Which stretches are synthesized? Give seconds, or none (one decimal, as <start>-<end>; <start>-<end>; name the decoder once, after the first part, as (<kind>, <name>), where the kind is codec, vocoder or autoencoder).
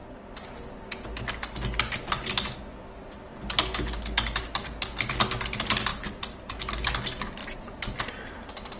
5.9-6.5 (vocoder, BigVGAN v2); 7.4-8.8